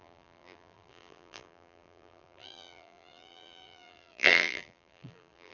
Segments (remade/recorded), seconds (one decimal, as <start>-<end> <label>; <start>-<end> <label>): 0.0-5.5 remade